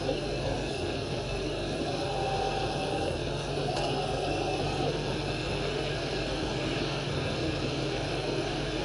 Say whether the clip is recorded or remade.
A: remade